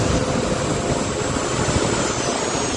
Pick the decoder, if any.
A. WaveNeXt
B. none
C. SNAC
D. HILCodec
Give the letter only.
B